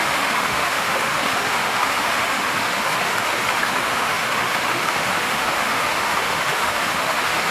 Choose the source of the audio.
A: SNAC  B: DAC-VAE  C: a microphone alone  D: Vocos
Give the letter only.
B